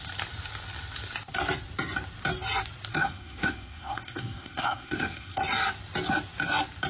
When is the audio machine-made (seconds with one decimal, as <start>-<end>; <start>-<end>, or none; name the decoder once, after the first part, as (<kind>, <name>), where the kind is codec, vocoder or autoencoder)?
2.9-5.4 (codec, SNAC)